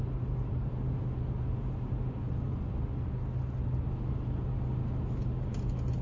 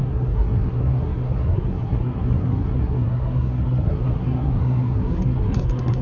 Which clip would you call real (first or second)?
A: first